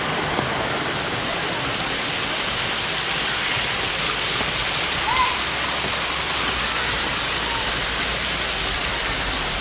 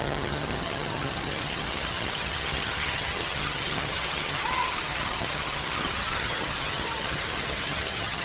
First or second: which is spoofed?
second